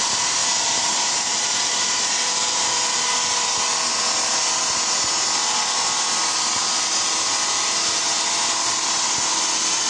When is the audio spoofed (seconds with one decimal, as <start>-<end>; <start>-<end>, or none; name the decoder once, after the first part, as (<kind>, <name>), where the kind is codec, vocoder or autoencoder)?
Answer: 0.4-1.6 (vocoder, BigVGAN v2)